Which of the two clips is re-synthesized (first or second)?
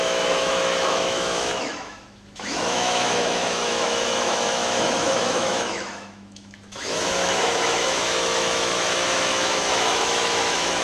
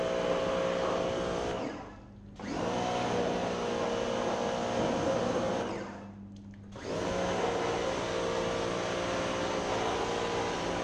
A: first